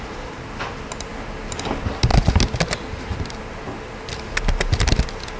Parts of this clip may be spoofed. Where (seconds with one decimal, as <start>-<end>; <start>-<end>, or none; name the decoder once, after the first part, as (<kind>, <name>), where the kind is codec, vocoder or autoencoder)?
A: none